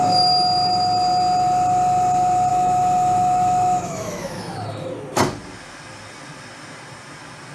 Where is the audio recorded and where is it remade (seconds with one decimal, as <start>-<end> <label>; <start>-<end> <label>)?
0.0-2.5 recorded; 2.5-4.9 remade; 4.9-7.5 recorded

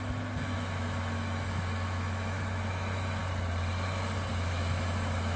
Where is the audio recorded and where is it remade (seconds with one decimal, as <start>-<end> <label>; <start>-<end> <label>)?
0.0-3.2 remade; 3.2-4.3 recorded; 4.3-5.4 remade

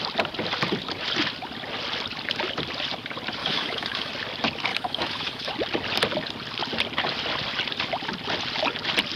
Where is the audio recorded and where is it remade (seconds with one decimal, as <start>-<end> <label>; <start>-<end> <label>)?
0.0-3.4 recorded; 3.4-4.1 remade; 4.1-4.7 recorded; 4.7-5.5 remade; 5.5-9.2 recorded

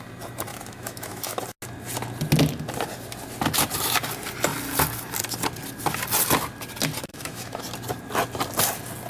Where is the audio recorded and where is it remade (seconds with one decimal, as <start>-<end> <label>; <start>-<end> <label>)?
0.0-0.5 recorded; 0.5-1.4 remade; 1.4-7.1 recorded; 7.1-7.6 remade; 7.6-9.1 recorded

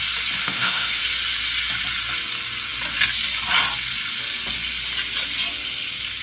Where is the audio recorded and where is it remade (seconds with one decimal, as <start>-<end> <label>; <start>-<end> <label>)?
0.0-0.4 recorded; 0.4-1.0 remade; 1.0-6.2 recorded

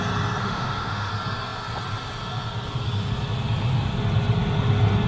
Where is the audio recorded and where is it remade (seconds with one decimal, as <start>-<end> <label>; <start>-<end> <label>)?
0.0-0.4 recorded; 0.4-1.1 remade; 1.1-5.1 recorded

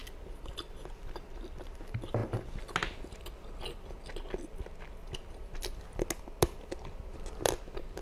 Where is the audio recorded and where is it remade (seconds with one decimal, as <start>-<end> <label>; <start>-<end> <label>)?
0.0-8.0 recorded